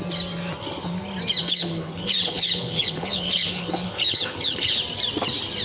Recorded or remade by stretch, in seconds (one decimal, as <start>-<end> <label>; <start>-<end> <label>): 0.0-1.4 recorded; 1.4-4.8 remade; 4.8-5.6 recorded